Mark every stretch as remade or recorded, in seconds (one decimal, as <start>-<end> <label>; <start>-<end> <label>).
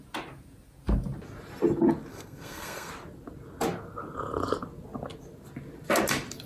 0.0-2.1 recorded; 2.1-2.9 remade; 2.9-6.5 recorded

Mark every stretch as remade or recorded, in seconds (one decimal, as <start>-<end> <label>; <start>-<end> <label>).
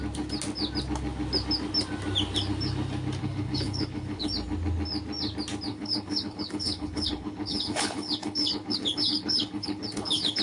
0.0-3.2 recorded; 3.2-4.3 remade; 4.3-5.7 recorded; 5.7-10.4 remade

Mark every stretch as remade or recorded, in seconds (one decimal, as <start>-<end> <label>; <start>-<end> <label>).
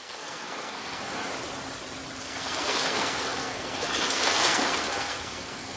0.0-1.3 remade; 1.3-2.2 recorded; 2.2-5.8 remade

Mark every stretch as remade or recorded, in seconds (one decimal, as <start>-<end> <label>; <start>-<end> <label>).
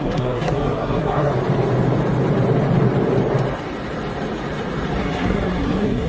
0.0-1.3 remade; 1.3-5.0 recorded; 5.0-6.1 remade